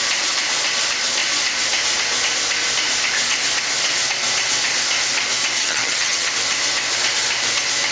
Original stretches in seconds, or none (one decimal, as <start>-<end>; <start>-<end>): 0.0-5.6; 6.3-7.9